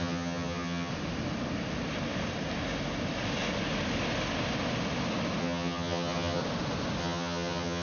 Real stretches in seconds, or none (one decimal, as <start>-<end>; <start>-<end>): 0.9-5.4; 6.4-7.0